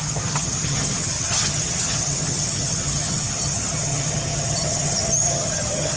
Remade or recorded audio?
remade